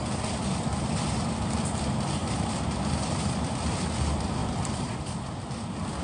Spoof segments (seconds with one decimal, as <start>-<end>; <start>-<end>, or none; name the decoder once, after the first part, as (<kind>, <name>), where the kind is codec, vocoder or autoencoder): 2.2-2.8 (vocoder, BigVGAN v2); 4.4-4.9